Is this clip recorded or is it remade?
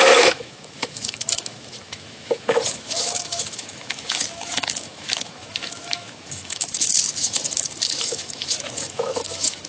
remade